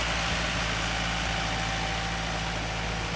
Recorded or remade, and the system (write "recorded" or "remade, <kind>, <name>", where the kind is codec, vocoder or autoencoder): recorded